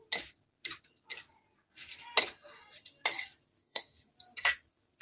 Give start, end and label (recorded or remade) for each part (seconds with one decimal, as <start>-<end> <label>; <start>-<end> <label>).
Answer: 0.0-3.6 recorded; 3.6-4.1 remade; 4.1-5.0 recorded